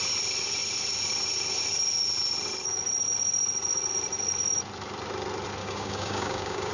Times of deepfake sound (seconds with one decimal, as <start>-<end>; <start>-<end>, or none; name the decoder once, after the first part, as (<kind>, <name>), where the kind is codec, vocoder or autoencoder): 5.6-6.7 (codec, DAC)